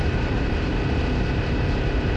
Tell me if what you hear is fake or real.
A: fake